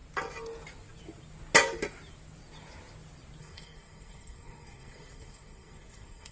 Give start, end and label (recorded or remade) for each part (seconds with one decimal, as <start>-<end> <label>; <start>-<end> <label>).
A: 0.0-3.4 recorded; 3.4-6.3 remade